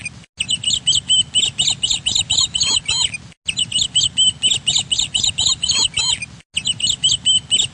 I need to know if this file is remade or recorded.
recorded